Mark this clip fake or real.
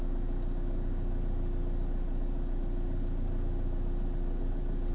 real